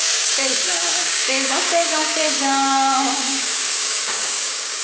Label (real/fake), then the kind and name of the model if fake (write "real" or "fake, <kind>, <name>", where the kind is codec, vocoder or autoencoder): fake, codec, DAC